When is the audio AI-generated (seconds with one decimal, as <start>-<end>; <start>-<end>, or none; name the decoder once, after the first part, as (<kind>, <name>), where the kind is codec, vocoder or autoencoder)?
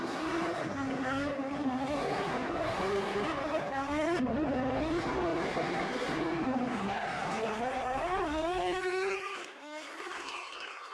0.0-10.9 (codec, SNAC)